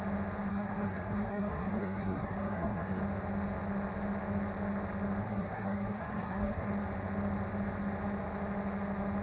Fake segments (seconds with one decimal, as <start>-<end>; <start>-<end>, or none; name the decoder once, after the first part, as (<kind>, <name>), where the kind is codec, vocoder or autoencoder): 0.5-3.0 (codec, SNAC); 5.2-6.7